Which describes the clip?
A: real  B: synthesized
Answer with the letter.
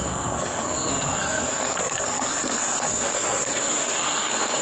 B